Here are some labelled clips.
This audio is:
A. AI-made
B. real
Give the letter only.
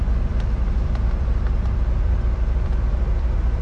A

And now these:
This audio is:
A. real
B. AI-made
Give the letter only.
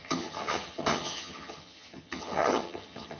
B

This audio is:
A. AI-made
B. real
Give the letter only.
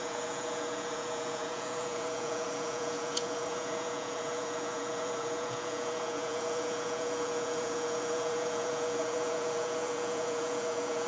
A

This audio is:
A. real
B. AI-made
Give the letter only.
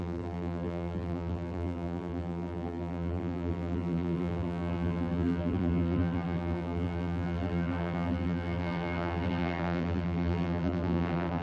B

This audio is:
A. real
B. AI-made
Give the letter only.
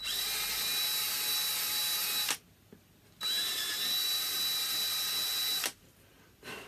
A